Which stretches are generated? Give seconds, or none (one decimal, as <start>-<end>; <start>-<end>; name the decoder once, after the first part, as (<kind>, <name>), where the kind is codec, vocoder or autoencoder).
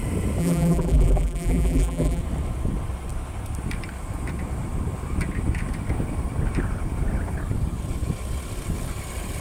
0.4-2.2 (vocoder, BigVGAN v2)